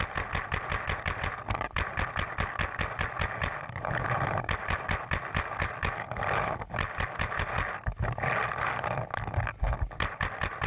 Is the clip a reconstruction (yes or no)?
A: no